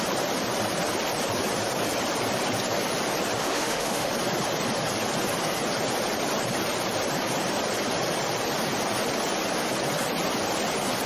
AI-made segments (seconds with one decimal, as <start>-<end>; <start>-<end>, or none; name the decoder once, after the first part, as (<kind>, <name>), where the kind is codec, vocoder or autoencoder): 3.4-4.1 (autoencoder, DAC-VAE)